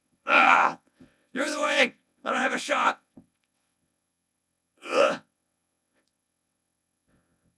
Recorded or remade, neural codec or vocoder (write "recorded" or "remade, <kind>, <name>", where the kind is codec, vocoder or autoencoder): remade, vocoder, WaveNeXt